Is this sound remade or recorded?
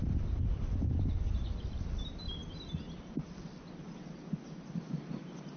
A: recorded